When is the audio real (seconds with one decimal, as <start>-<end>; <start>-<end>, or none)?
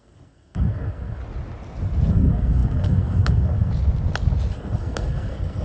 1.2-2.1; 3.7-4.5